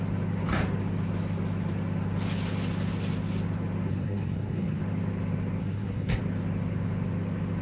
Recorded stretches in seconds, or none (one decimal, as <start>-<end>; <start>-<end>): 0.0-3.9; 4.8-5.6; 6.2-7.6